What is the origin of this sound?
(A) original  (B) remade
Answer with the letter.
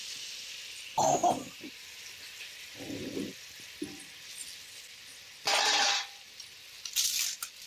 A